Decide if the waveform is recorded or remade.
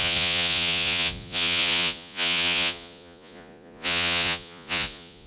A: remade